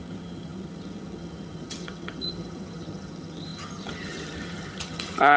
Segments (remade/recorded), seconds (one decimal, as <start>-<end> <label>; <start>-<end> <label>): 0.0-5.4 remade